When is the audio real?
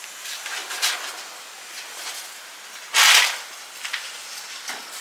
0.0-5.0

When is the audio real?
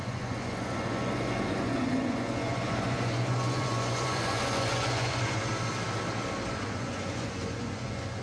5.5-6.5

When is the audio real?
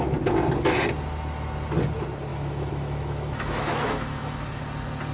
0.0-2.3; 4.6-5.1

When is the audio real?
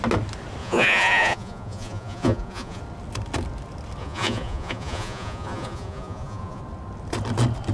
0.0-0.6; 2.8-4.0; 6.6-7.7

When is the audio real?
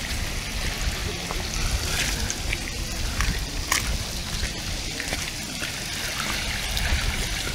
0.0-7.5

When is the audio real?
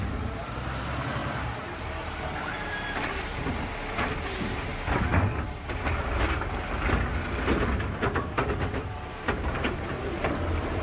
4.7-7.9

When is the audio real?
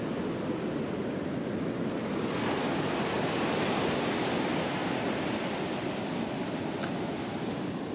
0.0-7.9